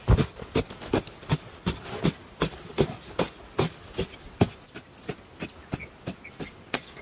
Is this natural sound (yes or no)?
yes